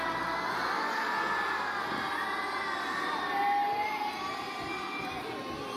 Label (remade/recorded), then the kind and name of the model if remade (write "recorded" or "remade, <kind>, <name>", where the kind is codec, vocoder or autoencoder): recorded